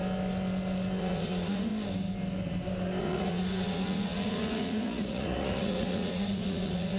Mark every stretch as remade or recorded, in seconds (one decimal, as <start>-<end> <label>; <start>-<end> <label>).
0.0-1.0 recorded; 1.0-1.7 remade; 1.7-3.0 recorded; 3.0-7.0 remade